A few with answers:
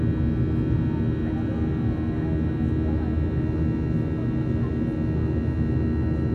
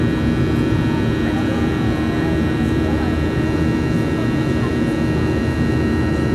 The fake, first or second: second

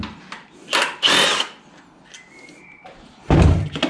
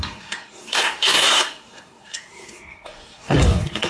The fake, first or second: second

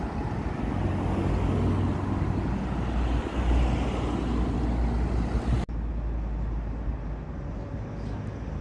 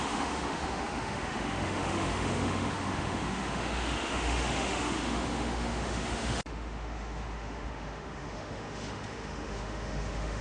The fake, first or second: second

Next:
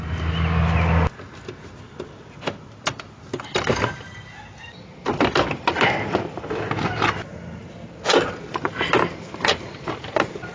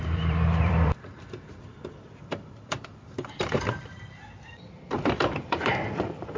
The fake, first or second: second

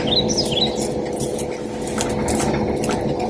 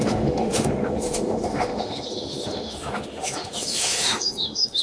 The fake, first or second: second